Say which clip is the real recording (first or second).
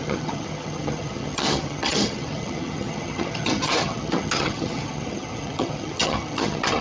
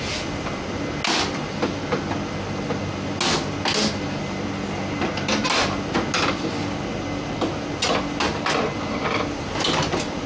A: second